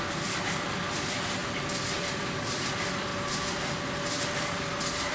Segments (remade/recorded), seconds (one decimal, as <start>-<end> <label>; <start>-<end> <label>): 0.0-1.4 remade; 1.4-2.0 recorded; 2.0-3.1 remade; 3.1-4.2 recorded; 4.2-5.1 remade